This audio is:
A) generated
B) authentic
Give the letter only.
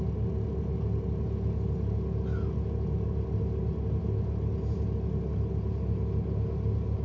B